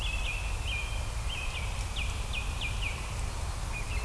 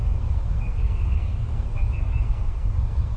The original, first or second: first